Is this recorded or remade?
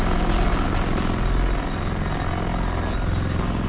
recorded